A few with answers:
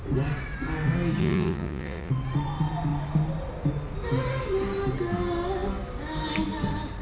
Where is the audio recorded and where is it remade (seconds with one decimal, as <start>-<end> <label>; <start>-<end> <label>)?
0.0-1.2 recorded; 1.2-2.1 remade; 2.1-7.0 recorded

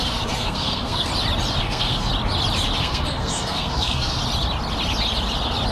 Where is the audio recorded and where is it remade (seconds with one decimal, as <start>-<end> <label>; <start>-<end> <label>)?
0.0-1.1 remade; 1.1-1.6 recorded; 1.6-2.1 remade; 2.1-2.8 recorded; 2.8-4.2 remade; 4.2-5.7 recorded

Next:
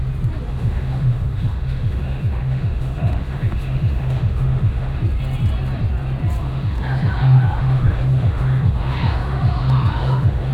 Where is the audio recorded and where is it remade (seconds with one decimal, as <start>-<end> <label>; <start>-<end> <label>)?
0.0-0.5 recorded; 0.5-5.0 remade; 5.0-6.4 recorded; 6.4-10.5 remade